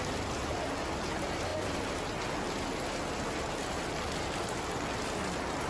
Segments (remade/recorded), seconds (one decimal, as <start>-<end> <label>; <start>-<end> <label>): 0.0-5.7 recorded